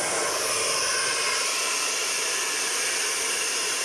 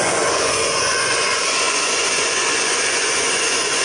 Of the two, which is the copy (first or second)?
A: second